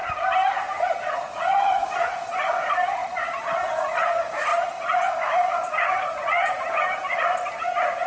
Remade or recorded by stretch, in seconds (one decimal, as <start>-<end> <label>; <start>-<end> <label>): 0.0-0.8 recorded; 0.8-8.1 remade